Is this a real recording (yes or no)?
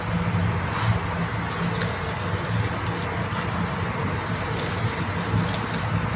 yes